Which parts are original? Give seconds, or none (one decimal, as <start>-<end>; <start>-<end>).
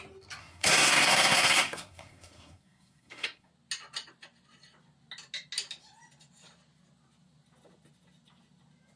0.0-0.4; 3.5-9.0